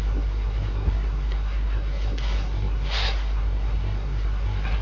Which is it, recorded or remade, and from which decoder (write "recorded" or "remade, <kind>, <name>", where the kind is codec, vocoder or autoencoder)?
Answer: remade, codec, SNAC